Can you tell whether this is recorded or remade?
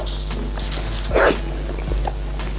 recorded